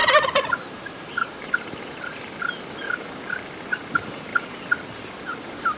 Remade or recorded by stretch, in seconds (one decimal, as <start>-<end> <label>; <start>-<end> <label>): 0.0-2.4 remade; 2.4-5.8 recorded